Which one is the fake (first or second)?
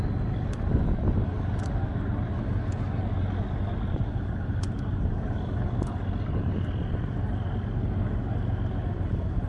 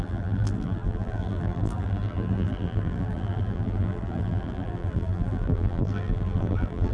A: second